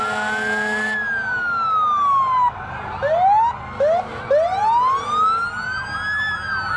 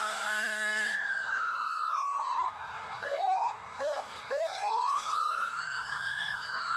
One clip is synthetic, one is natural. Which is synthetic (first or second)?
second